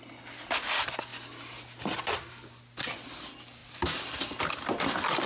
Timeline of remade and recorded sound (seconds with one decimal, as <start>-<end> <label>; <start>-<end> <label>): 0.0-5.3 recorded